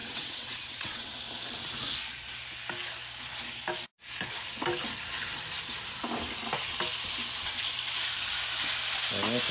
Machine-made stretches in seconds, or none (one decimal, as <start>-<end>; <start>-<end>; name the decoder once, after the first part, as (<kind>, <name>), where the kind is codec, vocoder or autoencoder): 0.0-1.1 (vocoder, WaveNeXt)

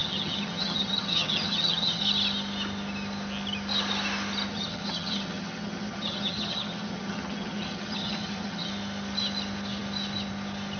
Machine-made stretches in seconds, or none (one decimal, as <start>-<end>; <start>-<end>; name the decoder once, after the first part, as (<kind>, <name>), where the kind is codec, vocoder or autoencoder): 0.0-2.0 (vocoder, HiFi-GAN); 4.5-8.7

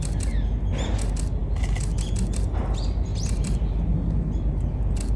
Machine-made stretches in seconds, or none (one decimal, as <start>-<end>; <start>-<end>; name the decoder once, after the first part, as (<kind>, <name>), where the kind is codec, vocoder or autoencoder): 3.1-3.7 (vocoder, BigVGAN v2)

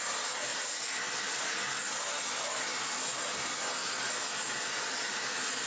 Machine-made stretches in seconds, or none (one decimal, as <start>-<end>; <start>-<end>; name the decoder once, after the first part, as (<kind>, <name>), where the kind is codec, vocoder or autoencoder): none

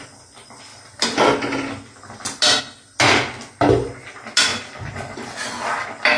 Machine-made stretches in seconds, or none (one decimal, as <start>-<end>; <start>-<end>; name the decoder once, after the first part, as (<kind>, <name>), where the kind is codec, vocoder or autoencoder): none

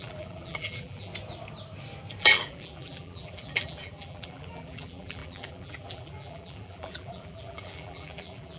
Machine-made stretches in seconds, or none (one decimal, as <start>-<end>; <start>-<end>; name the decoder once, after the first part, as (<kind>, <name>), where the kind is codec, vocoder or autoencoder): 0.0-1.1 (vocoder, BigVGAN v2); 2.2-8.6

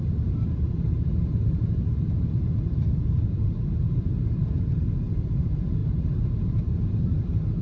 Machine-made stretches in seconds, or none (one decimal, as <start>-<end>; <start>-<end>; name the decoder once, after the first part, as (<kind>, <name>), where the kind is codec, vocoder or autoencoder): 0.0-7.6 (vocoder, BigVGAN v2)